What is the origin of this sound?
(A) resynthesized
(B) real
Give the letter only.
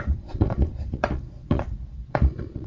A